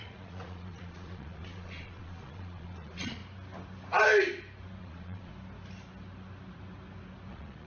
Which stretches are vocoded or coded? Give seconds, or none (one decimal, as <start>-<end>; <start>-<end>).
0.0-3.2; 4.8-5.3; 7.3-7.7